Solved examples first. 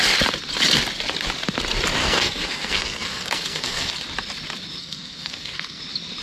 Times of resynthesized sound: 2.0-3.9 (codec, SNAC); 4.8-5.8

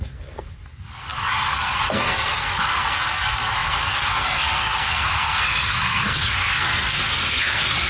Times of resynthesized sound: 0.0-7.9 (codec, SNAC)

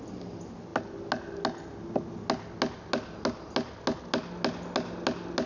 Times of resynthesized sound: none

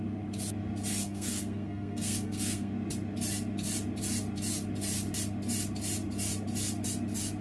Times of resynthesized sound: 0.9-2.7 (codec, SNAC)

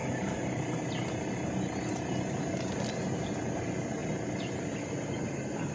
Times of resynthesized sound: none

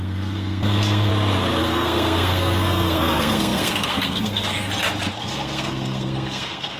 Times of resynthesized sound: 0.0-1.1 (codec, SNAC); 1.6-4.7; 5.2-6.8

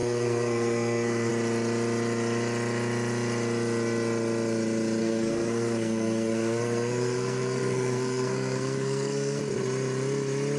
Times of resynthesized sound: 0.0-1.3 (codec, SNAC); 5.0-9.4